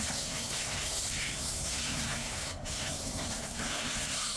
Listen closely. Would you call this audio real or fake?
fake